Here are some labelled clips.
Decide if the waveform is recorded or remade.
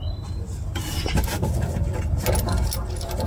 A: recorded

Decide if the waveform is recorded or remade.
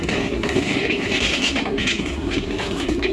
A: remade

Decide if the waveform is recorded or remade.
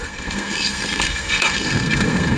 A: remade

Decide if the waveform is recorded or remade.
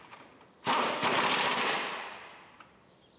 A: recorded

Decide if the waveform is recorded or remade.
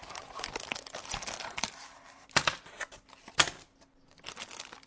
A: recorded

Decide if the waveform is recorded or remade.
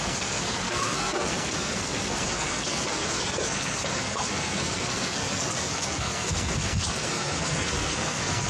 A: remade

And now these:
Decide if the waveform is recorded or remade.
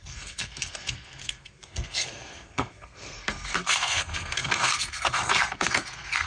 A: remade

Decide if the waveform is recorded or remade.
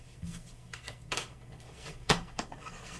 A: remade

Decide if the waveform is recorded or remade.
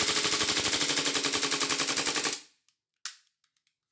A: recorded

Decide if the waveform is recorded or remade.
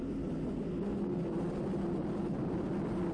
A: recorded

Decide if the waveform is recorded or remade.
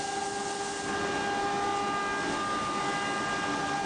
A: recorded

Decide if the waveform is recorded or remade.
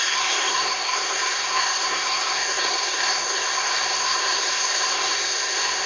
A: remade